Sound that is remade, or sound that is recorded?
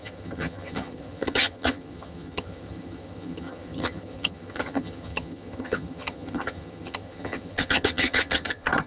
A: remade